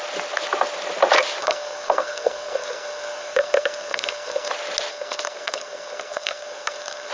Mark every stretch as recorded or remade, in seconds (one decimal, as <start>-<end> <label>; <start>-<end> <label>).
0.0-1.4 recorded; 1.4-4.5 remade; 4.5-4.9 recorded; 4.9-7.1 remade